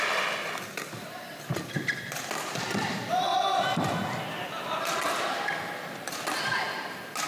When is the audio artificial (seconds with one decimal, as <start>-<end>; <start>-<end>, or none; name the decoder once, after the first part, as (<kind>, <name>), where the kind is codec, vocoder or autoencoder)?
none